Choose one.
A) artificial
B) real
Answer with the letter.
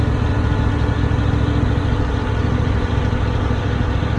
B